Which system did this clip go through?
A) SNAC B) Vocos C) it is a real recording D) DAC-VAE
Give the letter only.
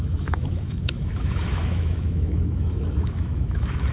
D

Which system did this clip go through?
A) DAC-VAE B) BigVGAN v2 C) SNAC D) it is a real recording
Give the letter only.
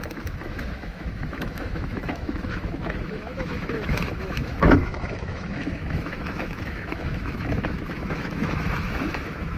A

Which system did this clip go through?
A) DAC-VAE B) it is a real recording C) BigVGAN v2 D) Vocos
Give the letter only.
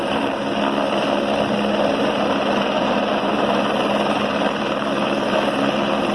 B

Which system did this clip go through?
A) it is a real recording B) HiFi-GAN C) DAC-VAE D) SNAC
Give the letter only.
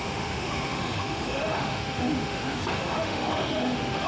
C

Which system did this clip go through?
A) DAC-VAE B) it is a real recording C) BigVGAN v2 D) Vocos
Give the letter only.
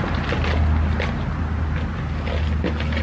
B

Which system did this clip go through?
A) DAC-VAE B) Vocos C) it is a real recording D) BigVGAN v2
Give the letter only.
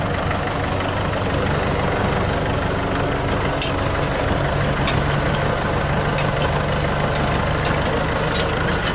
C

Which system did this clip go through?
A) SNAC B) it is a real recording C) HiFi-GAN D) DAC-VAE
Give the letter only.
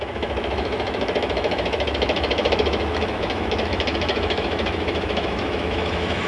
D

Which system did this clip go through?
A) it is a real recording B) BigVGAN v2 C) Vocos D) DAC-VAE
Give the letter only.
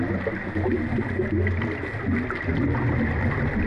A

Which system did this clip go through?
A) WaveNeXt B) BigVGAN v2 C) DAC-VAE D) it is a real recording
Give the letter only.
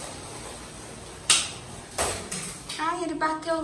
D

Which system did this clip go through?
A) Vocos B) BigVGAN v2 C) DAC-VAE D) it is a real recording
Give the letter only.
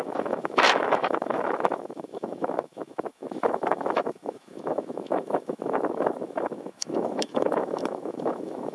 C